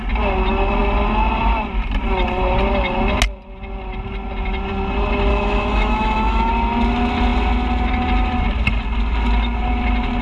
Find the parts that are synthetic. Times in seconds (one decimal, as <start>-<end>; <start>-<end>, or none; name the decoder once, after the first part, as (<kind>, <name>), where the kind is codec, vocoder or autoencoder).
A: 5.3-6.5 (autoencoder, DAC-VAE)